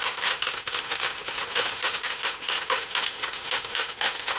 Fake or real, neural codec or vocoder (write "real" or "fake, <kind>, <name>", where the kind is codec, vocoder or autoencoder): fake, autoencoder, DAC-VAE